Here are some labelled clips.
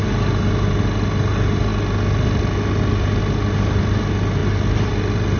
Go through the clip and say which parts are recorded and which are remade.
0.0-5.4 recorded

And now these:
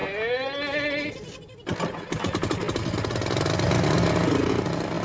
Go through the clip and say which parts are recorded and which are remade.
0.0-5.0 recorded